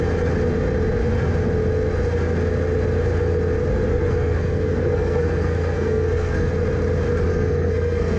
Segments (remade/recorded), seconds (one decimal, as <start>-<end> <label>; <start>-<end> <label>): 0.0-3.9 recorded; 3.9-6.5 remade; 6.5-7.3 recorded; 7.3-8.2 remade